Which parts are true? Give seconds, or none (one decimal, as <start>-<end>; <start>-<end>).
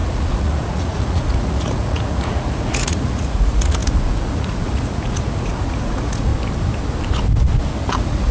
6.3-7.9